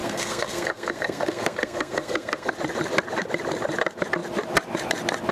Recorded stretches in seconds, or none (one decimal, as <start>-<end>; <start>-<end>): 2.5-5.3

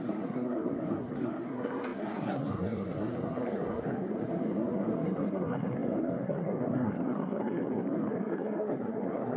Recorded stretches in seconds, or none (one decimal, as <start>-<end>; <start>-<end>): none

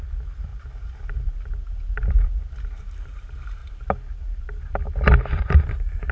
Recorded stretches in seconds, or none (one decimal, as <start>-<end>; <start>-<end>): 0.0-6.1

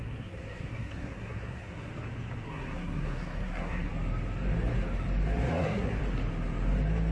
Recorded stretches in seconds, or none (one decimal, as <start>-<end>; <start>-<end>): 1.9-2.5; 3.9-5.5; 6.0-7.1

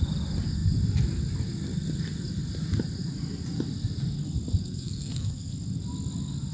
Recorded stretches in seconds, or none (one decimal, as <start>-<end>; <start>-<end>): 0.0-4.6; 5.5-6.5

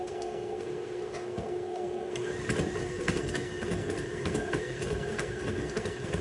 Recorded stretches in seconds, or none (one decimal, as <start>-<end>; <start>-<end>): 2.3-2.8

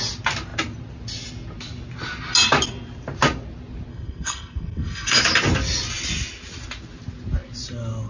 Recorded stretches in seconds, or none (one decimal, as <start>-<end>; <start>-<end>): 0.0-3.9; 5.2-8.1

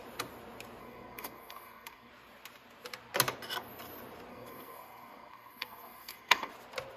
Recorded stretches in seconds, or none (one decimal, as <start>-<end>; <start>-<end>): 0.0-0.8; 2.1-4.3; 6.5-7.0